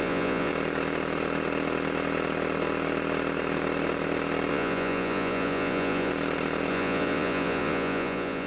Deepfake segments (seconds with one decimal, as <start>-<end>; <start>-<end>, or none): 0.0-0.5; 4.5-6.1; 6.7-8.5